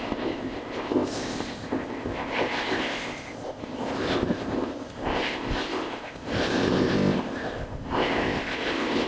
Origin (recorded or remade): remade